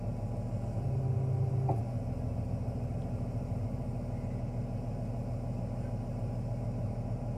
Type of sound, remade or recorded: recorded